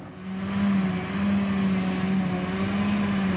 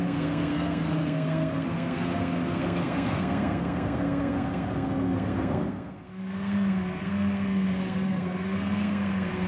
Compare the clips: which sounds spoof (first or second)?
second